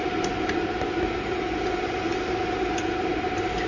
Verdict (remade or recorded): recorded